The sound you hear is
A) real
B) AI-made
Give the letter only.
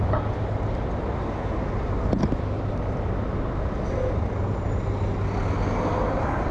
A